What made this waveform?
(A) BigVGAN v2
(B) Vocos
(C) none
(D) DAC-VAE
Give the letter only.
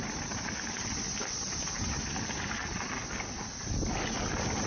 C